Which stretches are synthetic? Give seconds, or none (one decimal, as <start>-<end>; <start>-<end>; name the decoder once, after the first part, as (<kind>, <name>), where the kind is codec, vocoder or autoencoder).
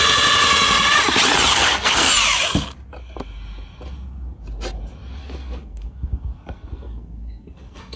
1.5-2.1 (codec, SNAC); 5.2-8.0